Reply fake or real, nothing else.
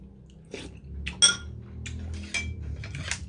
real